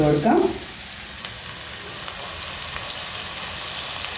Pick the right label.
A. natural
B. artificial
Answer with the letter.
A